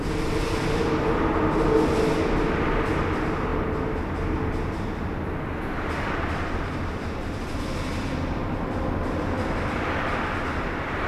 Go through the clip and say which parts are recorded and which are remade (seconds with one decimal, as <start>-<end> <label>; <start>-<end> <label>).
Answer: 0.0-11.1 recorded